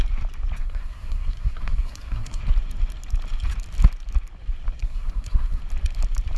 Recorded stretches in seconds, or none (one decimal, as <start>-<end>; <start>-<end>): 0.0-0.6; 2.4-4.8; 5.6-6.4